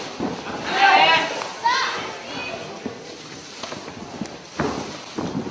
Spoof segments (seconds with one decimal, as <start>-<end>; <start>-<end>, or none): none